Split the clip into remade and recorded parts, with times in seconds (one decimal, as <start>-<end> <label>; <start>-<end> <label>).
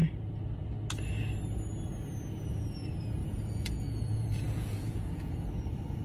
0.0-3.2 recorded; 3.2-5.5 remade; 5.5-6.0 recorded